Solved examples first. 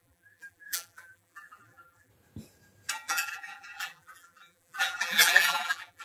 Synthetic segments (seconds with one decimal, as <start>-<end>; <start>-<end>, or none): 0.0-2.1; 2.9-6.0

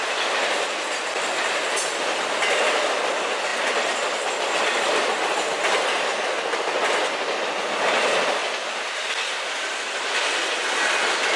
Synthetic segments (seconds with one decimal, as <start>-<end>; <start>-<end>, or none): 8.4-9.1

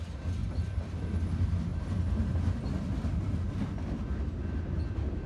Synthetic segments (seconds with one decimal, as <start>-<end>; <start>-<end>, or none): 0.4-1.0